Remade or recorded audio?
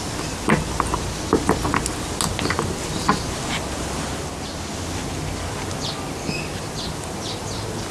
recorded